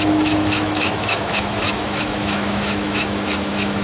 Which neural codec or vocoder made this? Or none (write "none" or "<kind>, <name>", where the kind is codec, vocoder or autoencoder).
autoencoder, DAC-VAE